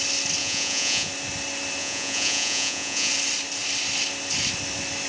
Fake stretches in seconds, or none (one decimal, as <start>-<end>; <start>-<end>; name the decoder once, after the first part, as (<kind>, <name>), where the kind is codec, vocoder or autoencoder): 0.4-1.1 (vocoder, Vocos); 1.8-3.1